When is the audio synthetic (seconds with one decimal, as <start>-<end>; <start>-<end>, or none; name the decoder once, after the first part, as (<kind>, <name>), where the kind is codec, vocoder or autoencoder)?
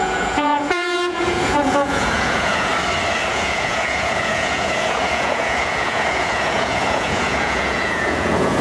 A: 0.0-2.7 (vocoder, Vocos); 3.3-8.6